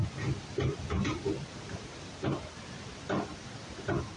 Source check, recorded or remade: recorded